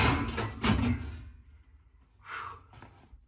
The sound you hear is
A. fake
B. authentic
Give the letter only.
B